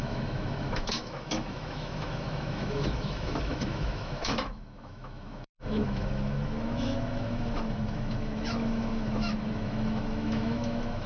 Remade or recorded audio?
remade